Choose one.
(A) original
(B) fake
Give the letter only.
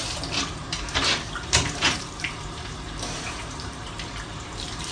B